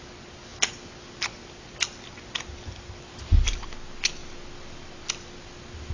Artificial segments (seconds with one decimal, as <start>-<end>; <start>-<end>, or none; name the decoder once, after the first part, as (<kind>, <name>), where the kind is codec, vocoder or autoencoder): none